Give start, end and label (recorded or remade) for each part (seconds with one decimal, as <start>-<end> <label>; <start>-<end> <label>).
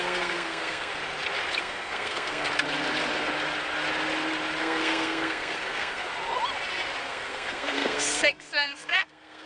0.0-0.9 remade; 0.9-1.6 recorded; 1.6-2.5 remade; 2.5-4.6 recorded; 4.6-6.1 remade; 6.1-7.0 recorded; 7.0-9.5 remade